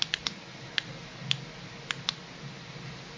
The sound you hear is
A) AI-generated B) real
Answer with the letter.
B